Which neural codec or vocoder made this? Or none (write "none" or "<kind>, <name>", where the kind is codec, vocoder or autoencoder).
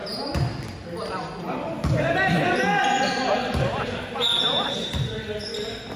none